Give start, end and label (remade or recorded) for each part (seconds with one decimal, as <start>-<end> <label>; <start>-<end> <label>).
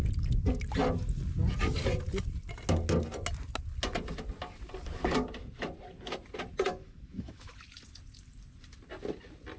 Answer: 0.0-6.8 recorded; 6.8-7.5 remade; 7.5-9.6 recorded